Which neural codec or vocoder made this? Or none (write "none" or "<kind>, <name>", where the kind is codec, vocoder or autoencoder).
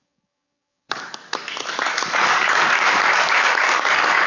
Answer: codec, DAC